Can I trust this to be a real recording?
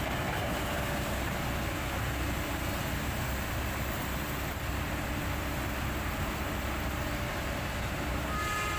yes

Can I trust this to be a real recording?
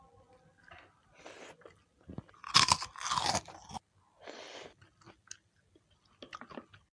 yes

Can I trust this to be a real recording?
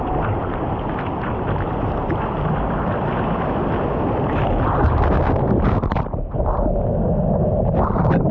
yes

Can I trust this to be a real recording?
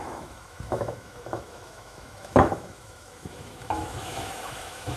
no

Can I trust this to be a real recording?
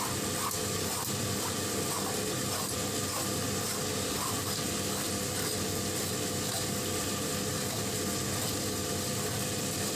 yes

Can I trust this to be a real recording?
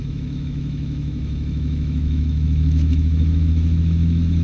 no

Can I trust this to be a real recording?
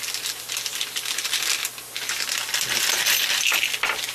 yes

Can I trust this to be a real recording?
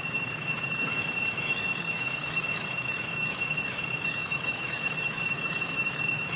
no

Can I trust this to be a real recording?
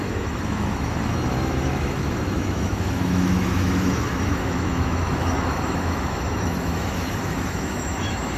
no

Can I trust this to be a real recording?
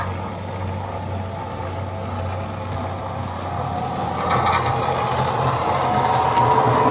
yes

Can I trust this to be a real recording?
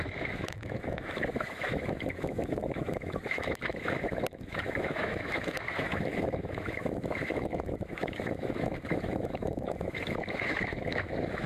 no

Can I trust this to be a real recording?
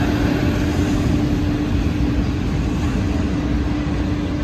yes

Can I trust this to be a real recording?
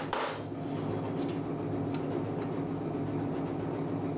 yes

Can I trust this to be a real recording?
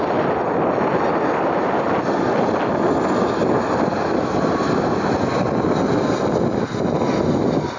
yes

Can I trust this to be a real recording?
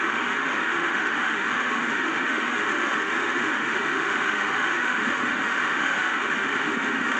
no